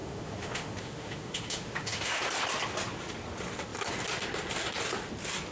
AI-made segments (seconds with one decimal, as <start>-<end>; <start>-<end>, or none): 0.0-2.2